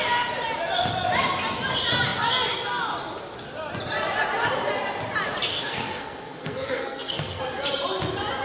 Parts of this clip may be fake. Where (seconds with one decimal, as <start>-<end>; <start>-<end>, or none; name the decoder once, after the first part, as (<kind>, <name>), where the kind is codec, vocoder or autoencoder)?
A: 5.5-7.4 (codec, SNAC)